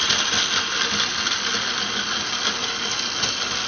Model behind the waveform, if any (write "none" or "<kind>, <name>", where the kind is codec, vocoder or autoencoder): none